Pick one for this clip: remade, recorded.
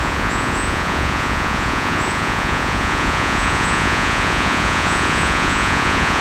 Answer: remade